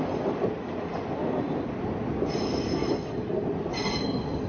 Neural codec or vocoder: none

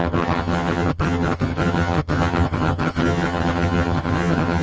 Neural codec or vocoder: vocoder, HiFi-GAN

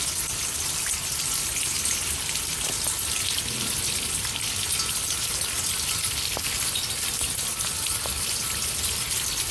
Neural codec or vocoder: none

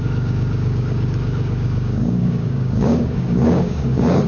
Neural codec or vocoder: codec, DAC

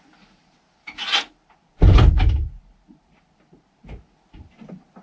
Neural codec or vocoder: none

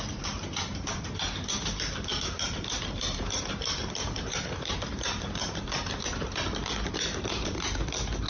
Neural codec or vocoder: vocoder, BigVGAN v2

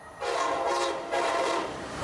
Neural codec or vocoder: none